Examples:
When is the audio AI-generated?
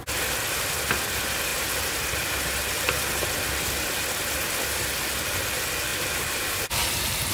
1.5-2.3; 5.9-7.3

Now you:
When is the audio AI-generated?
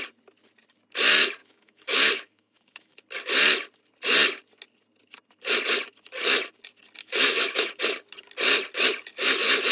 1.4-3.0; 7.0-7.8